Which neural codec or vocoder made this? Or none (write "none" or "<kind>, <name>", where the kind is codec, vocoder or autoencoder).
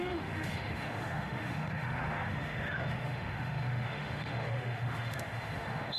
autoencoder, DAC-VAE